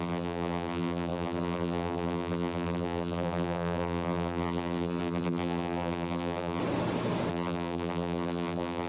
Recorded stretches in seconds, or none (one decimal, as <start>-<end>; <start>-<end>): 6.6-7.3